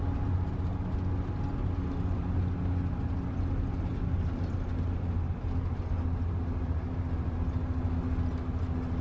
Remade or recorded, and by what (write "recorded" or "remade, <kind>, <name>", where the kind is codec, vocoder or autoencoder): recorded